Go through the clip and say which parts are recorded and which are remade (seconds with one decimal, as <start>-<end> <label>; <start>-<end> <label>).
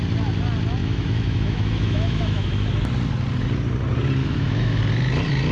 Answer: 0.0-0.8 recorded; 0.8-2.7 remade; 2.7-4.2 recorded; 4.2-4.8 remade; 4.8-5.5 recorded